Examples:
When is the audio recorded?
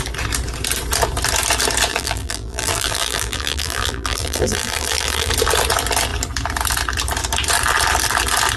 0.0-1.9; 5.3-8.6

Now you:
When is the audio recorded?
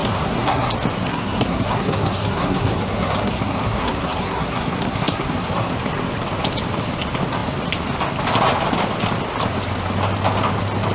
0.7-1.1; 5.7-10.9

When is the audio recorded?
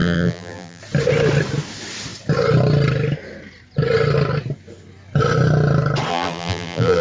0.8-6.1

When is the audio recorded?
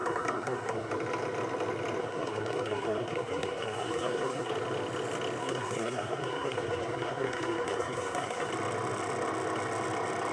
0.9-2.0; 4.5-5.4; 8.5-10.3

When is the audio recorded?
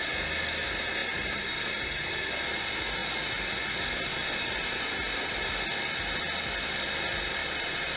0.0-1.0; 2.1-7.4